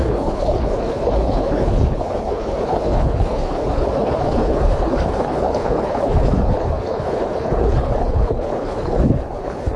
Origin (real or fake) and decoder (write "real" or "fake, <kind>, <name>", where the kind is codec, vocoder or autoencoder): fake, codec, HILCodec